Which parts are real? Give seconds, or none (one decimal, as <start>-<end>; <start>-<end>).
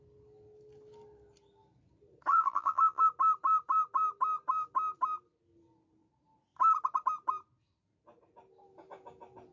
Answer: 0.0-2.3; 3.0-9.5